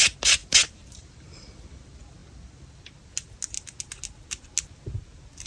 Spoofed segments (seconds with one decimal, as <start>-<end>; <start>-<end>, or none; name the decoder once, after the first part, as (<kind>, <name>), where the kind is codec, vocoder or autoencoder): 0.4-1.5 (vocoder, BigVGAN v2)